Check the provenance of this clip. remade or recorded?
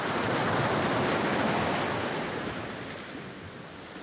recorded